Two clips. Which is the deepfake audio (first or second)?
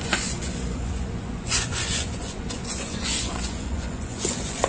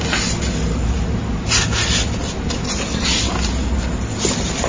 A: first